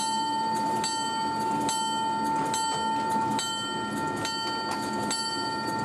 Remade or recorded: recorded